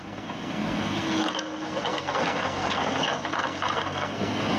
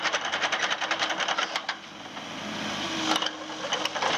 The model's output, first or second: first